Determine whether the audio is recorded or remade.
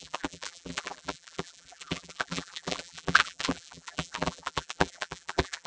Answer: remade